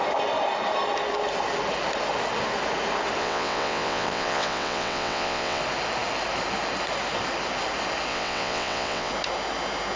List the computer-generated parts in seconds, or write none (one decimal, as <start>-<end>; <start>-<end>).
3.2-5.6; 8.1-9.1